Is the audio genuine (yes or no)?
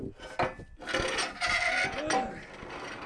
yes